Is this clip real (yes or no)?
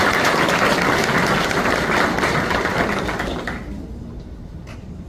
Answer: yes